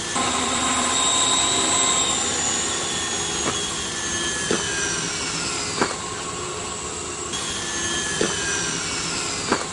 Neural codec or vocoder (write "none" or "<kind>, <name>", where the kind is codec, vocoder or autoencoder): none